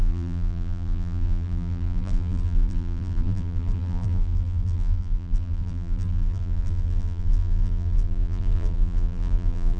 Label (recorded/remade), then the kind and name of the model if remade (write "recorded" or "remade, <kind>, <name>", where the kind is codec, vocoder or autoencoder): remade, vocoder, BigVGAN v2